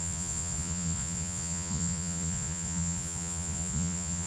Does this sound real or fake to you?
fake